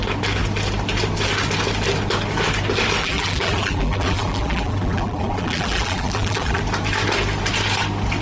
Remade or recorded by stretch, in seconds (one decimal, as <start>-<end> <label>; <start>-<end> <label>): 0.0-3.0 recorded; 3.0-6.6 remade; 6.6-8.2 recorded